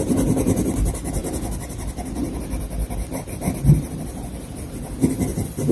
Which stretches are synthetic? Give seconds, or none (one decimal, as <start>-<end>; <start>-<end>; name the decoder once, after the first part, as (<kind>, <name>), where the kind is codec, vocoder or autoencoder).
none